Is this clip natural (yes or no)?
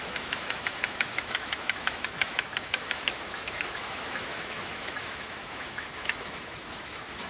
no